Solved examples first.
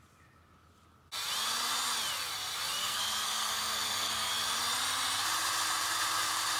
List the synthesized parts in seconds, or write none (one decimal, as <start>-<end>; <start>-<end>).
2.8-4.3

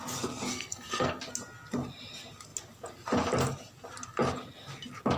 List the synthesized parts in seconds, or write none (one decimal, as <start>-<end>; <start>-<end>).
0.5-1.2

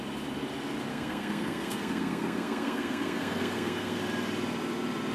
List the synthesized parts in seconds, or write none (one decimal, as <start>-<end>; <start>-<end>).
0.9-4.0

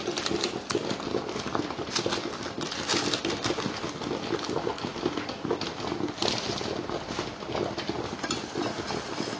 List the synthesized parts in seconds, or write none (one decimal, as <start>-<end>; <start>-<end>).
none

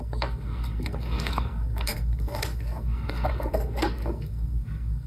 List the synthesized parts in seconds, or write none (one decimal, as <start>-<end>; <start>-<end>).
0.0-5.1

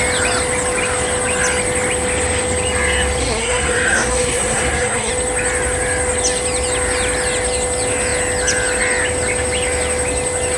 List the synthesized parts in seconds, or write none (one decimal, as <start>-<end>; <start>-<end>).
3.2-5.1

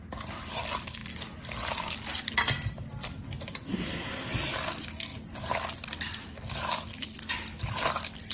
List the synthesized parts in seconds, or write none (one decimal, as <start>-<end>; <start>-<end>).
3.6-4.3

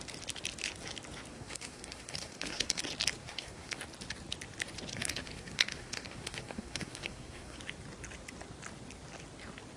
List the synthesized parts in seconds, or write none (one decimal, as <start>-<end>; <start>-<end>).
1.3-2.8; 3.2-3.8; 4.9-7.6